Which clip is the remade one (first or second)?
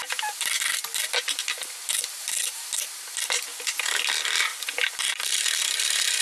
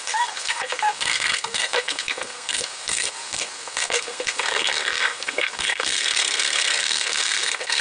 second